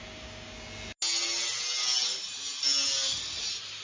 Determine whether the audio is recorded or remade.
recorded